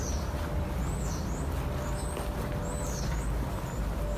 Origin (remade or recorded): recorded